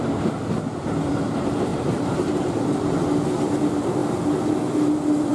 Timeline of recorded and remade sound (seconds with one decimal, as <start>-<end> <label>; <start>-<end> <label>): 0.0-1.7 recorded; 1.7-2.5 remade; 2.5-5.3 recorded